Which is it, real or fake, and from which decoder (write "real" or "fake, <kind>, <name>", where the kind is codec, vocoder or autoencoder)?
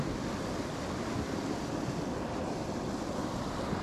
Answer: real